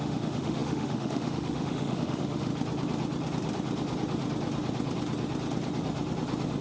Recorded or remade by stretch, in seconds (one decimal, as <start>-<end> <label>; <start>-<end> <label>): 0.0-2.5 remade; 2.5-6.6 recorded